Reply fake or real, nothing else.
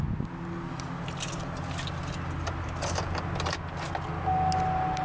real